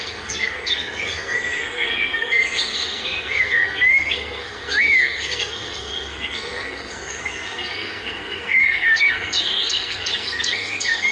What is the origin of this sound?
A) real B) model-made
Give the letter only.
B